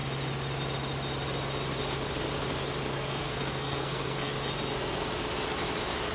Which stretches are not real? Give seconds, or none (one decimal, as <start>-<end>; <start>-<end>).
2.9-4.3